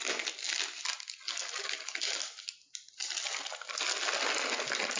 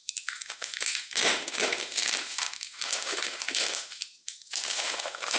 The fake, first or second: second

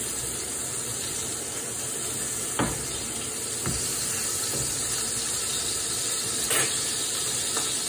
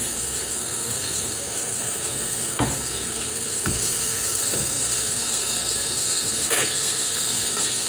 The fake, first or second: second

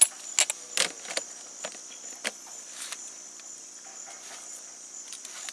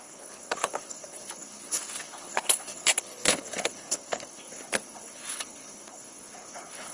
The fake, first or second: second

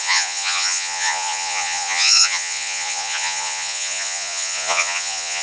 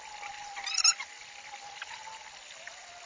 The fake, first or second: first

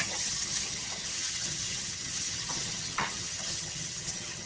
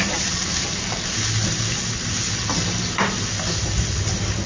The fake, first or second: first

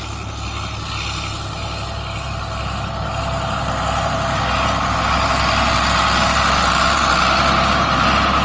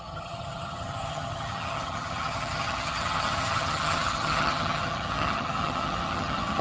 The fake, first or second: second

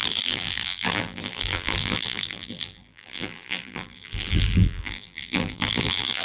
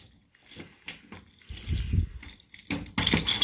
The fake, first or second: first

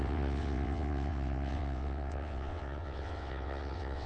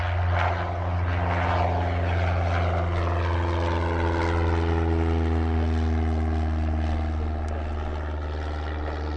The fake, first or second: first